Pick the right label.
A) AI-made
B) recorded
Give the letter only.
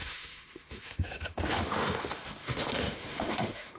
A